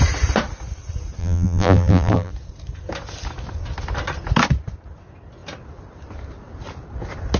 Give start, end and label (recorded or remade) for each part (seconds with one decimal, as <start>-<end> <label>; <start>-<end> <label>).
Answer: 0.0-1.2 recorded; 1.2-2.3 remade; 2.3-7.4 recorded